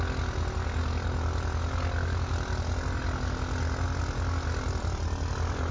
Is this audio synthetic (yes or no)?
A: no